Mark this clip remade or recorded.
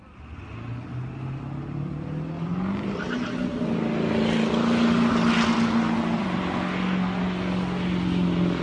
recorded